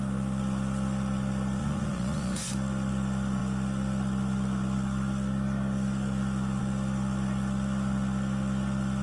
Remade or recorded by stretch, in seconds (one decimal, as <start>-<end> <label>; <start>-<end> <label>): 0.0-1.6 recorded; 1.6-2.5 remade; 2.5-9.0 recorded

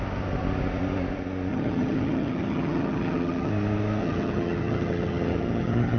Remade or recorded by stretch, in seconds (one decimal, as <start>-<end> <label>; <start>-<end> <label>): 0.0-1.5 recorded; 1.5-3.5 remade; 3.5-4.0 recorded; 4.0-6.0 remade